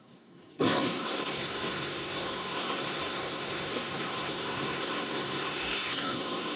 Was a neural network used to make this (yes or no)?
yes